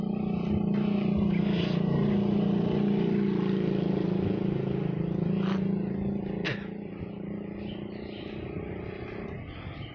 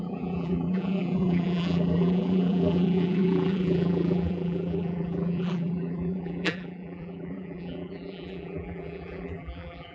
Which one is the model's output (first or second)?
second